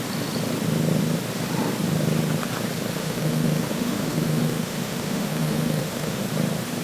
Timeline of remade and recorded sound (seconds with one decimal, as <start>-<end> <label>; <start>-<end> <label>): 0.0-3.0 recorded; 3.0-6.2 remade; 6.2-6.8 recorded